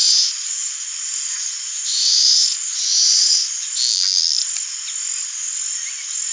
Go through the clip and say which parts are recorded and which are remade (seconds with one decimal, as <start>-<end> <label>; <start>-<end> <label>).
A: 0.0-3.8 remade; 3.8-6.3 recorded

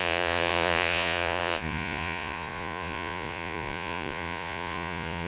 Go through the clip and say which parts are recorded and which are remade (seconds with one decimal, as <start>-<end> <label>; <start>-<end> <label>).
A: 0.0-5.3 remade

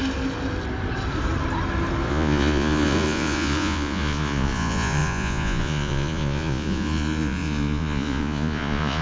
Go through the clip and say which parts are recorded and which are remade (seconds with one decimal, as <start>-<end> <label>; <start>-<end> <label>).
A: 0.0-2.1 recorded; 2.1-9.0 remade

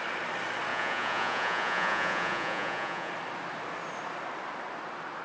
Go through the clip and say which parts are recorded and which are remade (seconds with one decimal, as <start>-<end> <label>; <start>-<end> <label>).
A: 0.0-0.7 recorded; 0.7-3.1 remade; 3.1-5.2 recorded

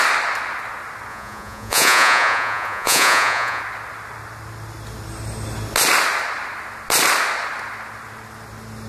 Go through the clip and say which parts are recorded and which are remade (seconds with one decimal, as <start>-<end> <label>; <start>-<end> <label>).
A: 0.0-1.1 recorded; 1.1-3.6 remade; 3.6-8.9 recorded

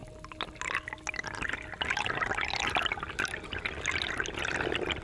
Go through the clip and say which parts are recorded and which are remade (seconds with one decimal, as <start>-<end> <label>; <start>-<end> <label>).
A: 0.0-5.0 recorded

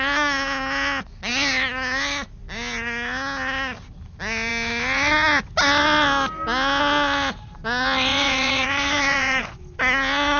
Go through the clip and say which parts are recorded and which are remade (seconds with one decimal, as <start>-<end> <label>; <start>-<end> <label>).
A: 0.0-8.1 recorded; 8.1-9.6 remade; 9.6-10.4 recorded

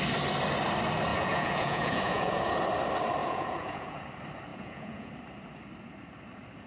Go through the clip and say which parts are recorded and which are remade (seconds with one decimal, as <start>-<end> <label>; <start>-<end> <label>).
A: 0.0-1.1 recorded; 1.1-2.6 remade; 2.6-3.2 recorded; 3.2-4.0 remade; 4.0-4.5 recorded; 4.5-5.1 remade; 5.1-6.7 recorded